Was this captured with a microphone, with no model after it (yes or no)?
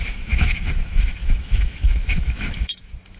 no